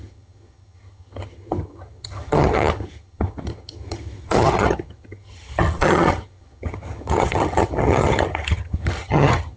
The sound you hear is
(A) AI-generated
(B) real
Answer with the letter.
A